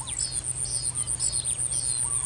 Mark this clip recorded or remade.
recorded